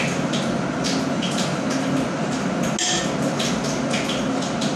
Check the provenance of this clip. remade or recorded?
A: recorded